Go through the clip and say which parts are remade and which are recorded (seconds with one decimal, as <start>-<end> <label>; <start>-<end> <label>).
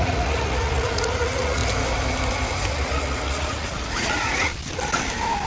0.0-1.6 remade; 1.6-2.7 recorded; 2.7-4.5 remade; 4.5-5.5 recorded